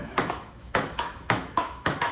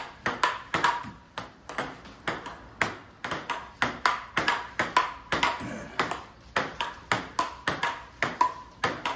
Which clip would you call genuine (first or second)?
second